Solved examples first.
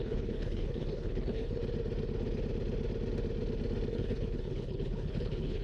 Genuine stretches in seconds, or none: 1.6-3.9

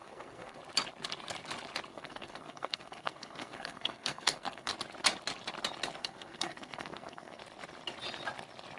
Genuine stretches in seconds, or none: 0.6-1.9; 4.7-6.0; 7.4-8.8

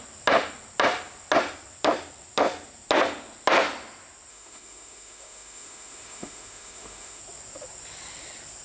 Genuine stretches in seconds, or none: 0.0-4.3; 7.2-8.6

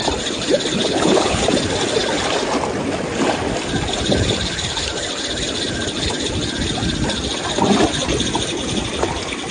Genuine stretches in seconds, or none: 0.0-0.8; 1.4-9.5

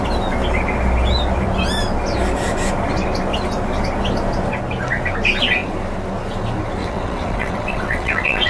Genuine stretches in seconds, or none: 0.0-6.8